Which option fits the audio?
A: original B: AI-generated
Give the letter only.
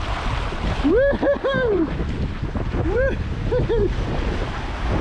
A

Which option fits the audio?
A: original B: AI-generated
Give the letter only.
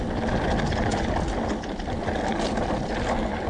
A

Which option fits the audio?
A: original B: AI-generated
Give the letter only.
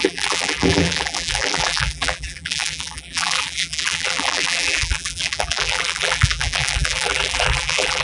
B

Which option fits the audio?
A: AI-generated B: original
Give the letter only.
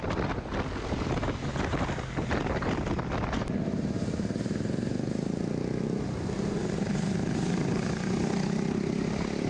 B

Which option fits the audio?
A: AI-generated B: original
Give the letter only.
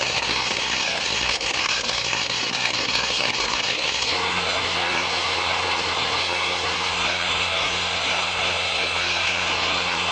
A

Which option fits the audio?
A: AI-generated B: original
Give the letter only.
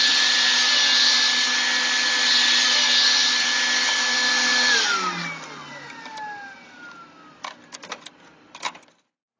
B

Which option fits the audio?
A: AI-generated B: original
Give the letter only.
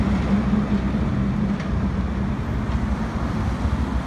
B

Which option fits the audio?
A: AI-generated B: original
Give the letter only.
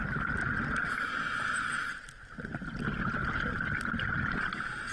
B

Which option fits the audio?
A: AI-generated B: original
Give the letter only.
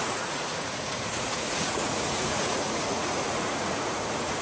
A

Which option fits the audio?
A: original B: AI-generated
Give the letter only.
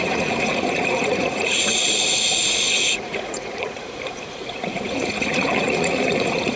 B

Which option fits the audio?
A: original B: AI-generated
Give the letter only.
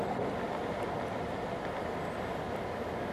A